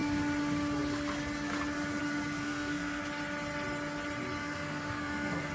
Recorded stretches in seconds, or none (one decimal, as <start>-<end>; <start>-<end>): 0.0-2.4; 3.0-4.4